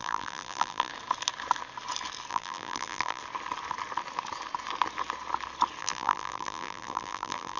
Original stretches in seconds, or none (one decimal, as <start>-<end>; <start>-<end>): 0.9-2.3; 3.2-5.8

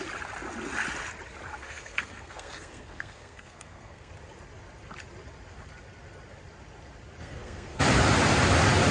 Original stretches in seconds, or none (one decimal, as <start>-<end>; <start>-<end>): 0.0-1.6; 4.1-7.2; 7.8-8.9

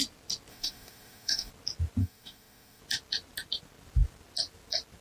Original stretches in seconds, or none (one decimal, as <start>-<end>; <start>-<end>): 0.0-0.5; 1.5-2.0; 2.8-5.0

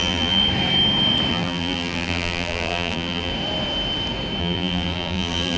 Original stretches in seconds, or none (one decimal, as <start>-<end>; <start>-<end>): 0.4-1.3; 3.3-4.4